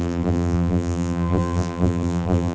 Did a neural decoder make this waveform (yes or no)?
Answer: yes